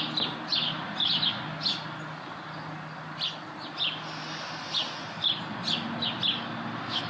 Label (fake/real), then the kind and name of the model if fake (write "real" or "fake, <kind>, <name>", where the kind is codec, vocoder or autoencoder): real